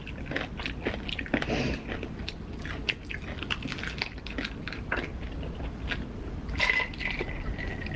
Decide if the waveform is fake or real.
real